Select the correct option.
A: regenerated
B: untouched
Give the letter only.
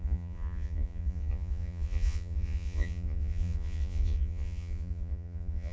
A